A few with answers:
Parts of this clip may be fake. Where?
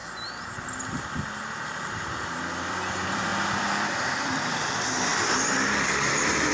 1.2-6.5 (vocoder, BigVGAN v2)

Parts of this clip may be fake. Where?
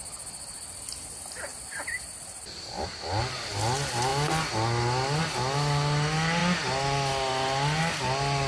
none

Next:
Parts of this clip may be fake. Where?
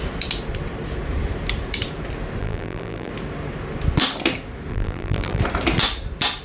2.4-3.1 (vocoder, BigVGAN v2); 4.7-5.4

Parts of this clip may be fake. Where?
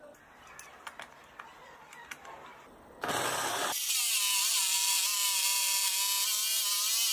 3.8-5.9 (vocoder, BigVGAN v2)